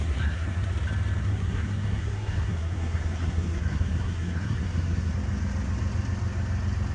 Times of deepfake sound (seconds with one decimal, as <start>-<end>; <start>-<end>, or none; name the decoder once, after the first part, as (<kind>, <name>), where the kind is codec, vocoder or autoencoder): 0.0-0.7 (codec, SNAC); 1.2-5.1